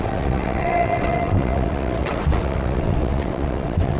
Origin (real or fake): fake